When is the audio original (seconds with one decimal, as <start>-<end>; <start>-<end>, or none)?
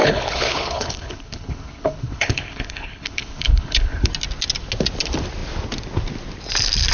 4.1-6.9